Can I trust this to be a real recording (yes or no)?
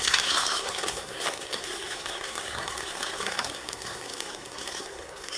no